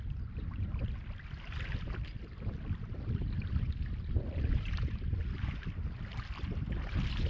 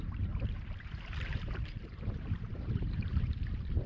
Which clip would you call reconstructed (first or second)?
second